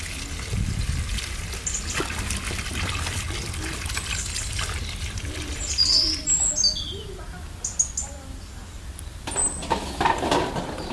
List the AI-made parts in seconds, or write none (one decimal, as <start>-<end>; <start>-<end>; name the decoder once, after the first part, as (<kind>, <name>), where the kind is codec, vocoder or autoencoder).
9.4-9.9 (vocoder, BigVGAN v2)